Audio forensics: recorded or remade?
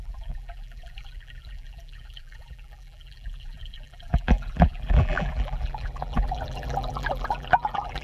remade